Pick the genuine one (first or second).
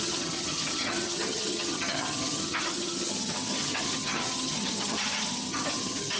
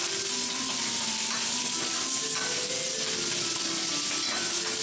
second